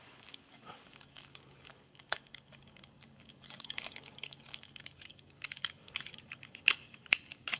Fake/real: fake